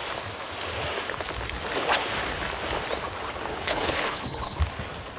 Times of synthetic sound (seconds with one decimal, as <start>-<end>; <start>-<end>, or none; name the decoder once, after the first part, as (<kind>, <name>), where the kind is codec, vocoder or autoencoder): 3.5-4.6 (codec, HILCodec)

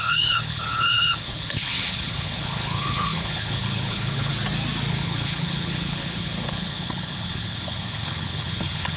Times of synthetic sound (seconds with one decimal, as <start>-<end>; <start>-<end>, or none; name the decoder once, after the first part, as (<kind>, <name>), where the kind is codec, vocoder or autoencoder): 0.0-4.3 (codec, HILCodec); 4.9-9.0

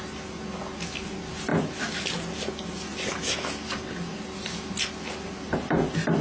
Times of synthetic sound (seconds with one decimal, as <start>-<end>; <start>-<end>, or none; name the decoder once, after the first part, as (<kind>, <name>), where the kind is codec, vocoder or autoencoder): none